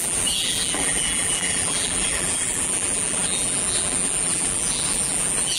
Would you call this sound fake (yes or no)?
yes